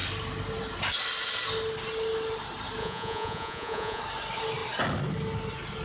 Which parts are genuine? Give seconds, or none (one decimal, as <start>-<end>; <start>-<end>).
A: 0.0-2.8; 4.0-5.8